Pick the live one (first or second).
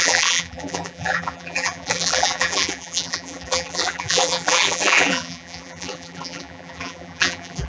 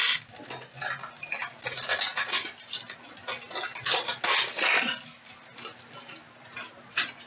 second